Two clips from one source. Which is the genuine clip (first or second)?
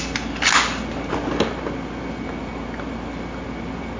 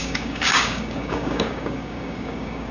first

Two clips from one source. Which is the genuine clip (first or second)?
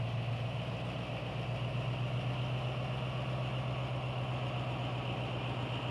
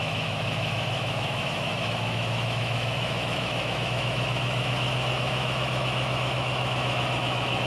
first